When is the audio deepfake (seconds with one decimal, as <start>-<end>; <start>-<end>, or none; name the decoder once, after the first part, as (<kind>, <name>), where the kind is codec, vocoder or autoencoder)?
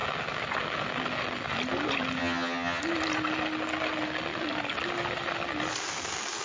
2.2-2.8 (vocoder, HiFi-GAN)